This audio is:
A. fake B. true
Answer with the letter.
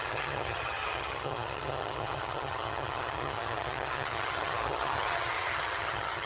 A